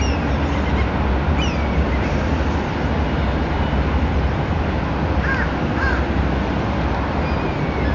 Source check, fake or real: real